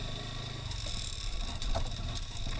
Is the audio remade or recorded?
recorded